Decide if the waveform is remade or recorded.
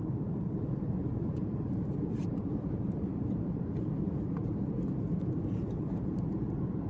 remade